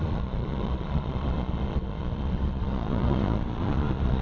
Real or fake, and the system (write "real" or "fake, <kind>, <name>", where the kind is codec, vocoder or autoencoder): fake, vocoder, Vocos